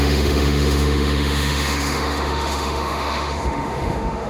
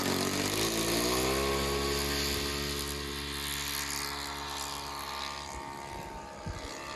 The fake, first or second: first